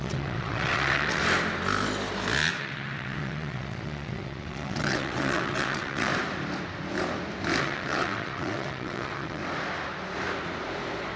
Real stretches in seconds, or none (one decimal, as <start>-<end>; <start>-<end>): 1.2-2.6; 6.1-7.6; 9.4-11.2